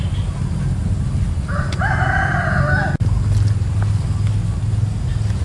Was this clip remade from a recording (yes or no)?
no